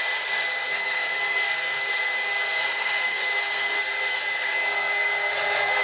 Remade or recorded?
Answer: remade